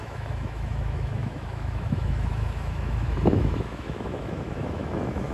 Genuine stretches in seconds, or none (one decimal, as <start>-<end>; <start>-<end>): none